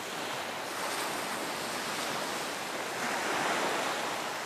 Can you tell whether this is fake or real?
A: real